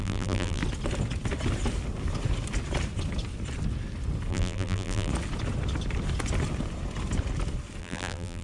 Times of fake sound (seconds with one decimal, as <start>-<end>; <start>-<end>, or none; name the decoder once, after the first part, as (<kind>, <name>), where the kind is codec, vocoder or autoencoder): 0.0-0.6 (vocoder, BigVGAN v2); 4.3-5.1; 7.8-8.4